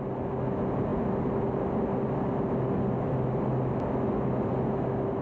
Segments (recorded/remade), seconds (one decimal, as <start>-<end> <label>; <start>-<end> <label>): 0.0-5.2 recorded